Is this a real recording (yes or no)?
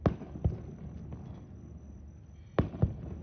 yes